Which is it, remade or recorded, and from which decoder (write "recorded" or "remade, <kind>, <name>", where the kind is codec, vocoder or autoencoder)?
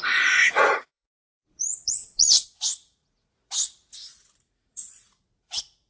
remade, vocoder, Vocos